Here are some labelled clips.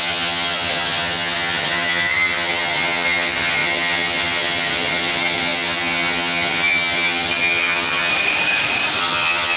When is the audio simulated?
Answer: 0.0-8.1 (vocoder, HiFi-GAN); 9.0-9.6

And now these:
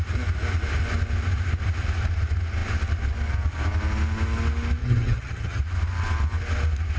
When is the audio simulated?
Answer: 4.8-5.6 (vocoder, HiFi-GAN)

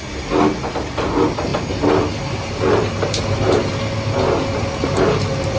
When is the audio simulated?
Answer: none